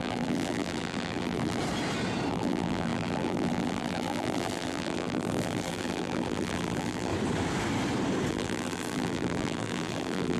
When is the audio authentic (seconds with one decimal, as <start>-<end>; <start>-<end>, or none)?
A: 1.6-2.3; 7.1-8.3

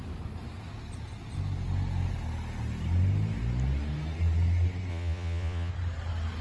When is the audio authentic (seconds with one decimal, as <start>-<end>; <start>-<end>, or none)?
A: 0.0-4.9; 5.7-6.4